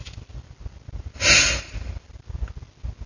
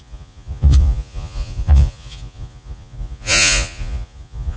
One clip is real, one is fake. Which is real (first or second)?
first